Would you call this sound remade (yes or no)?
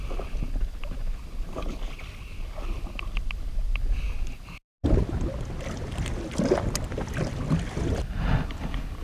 no